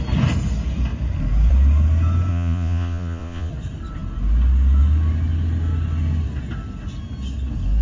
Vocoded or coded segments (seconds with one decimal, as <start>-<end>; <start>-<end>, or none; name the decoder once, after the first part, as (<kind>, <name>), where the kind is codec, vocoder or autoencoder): 2.3-3.5 (vocoder, Vocos)